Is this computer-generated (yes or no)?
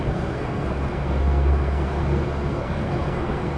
yes